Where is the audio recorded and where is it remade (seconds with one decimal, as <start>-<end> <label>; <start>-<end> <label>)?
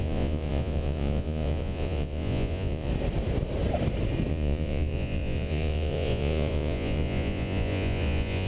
0.0-2.9 remade; 2.9-4.3 recorded; 4.3-8.5 remade